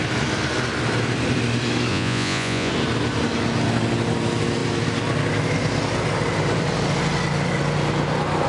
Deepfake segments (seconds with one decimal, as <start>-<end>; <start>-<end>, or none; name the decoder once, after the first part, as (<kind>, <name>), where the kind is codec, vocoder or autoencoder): 1.9-2.7 (vocoder, Vocos)